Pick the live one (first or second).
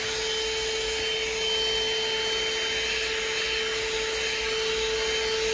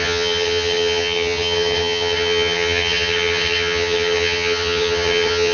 first